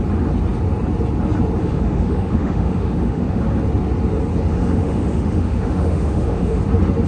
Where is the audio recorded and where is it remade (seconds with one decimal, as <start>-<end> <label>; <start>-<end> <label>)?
0.0-1.6 recorded; 1.6-3.4 remade; 3.4-4.5 recorded; 4.5-6.6 remade; 6.6-7.1 recorded